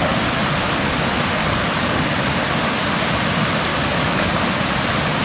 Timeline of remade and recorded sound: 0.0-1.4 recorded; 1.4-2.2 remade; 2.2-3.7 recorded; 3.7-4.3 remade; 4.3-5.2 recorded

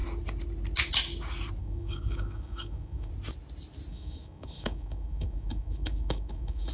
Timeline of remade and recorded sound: 0.0-1.6 recorded; 1.6-3.1 remade; 3.1-3.9 recorded; 3.9-6.7 remade